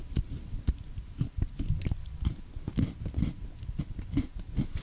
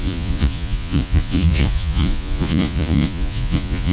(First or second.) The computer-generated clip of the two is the second